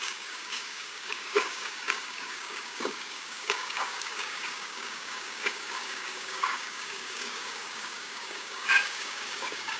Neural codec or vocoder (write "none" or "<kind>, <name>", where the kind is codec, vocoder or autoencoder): codec, DAC